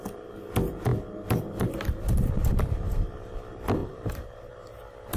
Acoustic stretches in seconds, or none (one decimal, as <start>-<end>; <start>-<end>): 0.0-2.4; 3.3-3.8; 4.5-5.2